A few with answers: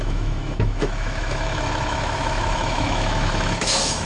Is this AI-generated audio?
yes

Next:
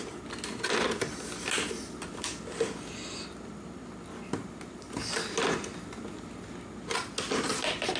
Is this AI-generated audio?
no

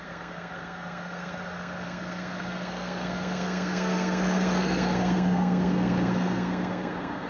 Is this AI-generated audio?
yes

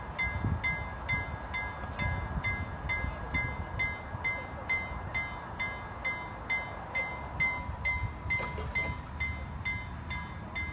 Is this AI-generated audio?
no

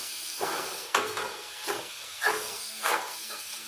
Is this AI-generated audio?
yes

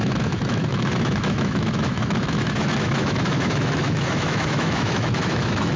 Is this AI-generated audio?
yes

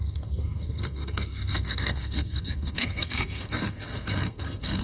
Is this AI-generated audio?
yes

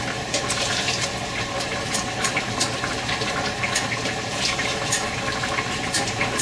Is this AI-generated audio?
yes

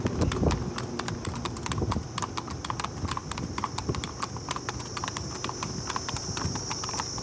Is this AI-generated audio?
no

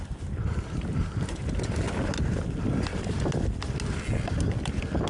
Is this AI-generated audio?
no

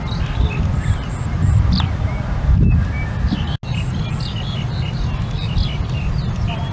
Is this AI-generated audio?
no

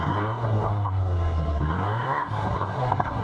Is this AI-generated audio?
yes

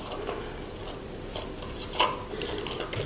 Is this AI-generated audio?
no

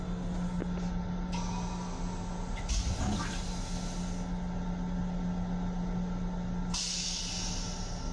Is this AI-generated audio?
no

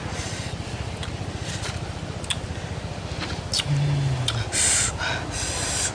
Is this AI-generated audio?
no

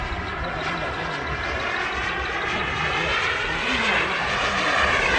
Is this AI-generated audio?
no